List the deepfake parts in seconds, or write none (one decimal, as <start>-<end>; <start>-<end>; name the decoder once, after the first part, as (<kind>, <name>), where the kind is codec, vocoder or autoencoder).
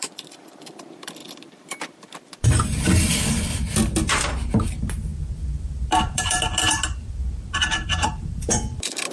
0.0-9.1 (vocoder, BigVGAN v2)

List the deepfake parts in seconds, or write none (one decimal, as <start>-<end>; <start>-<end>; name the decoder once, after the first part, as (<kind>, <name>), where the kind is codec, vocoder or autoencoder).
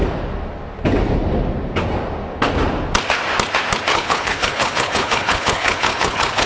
3.9-6.5 (codec, HILCodec)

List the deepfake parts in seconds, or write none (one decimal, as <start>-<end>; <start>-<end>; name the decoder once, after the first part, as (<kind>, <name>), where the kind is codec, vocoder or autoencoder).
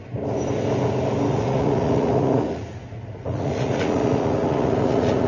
1.3-5.3 (vocoder, Vocos)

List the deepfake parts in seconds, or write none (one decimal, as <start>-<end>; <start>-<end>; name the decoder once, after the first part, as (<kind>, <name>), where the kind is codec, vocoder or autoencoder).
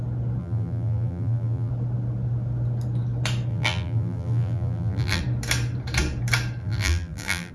0.4-1.7 (vocoder, BigVGAN v2); 3.5-5.2; 6.6-7.5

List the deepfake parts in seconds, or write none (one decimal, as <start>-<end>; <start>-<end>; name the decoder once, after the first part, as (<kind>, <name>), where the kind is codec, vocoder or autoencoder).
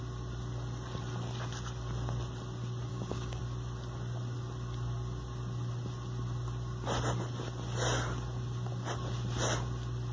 2.9-3.4 (codec, DAC)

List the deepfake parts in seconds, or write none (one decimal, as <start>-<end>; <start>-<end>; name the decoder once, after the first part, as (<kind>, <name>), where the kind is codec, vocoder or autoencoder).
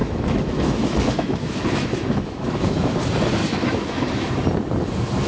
0.0-2.9 (autoencoder, DAC-VAE); 3.4-4.3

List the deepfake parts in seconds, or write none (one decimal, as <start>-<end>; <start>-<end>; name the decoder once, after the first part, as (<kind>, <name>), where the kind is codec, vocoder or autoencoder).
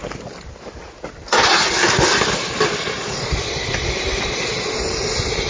none